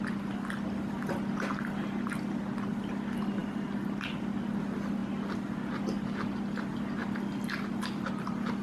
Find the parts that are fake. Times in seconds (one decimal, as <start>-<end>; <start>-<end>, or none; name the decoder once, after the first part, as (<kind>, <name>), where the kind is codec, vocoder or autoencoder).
none